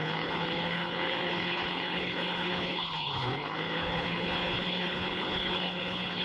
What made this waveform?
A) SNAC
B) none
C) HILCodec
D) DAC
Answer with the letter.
C